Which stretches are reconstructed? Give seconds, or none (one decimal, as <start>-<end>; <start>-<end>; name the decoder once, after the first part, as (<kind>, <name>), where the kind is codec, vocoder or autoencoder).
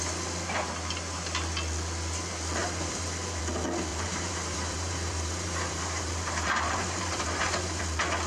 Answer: 2.6-3.4 (vocoder, BigVGAN v2); 3.9-7.8